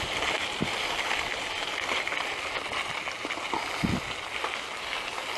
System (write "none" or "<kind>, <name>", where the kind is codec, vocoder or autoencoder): none